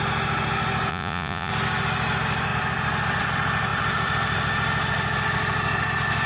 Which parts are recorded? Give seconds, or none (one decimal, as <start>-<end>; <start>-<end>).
0.0-0.9; 1.5-6.3